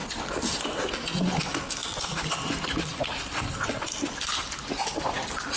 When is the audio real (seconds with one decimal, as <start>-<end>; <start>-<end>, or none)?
0.0-5.6